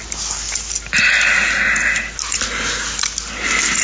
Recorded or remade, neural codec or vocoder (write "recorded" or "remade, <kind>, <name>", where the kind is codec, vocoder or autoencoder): recorded